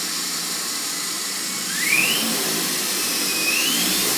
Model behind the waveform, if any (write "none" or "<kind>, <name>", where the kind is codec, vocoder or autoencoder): vocoder, BigVGAN v2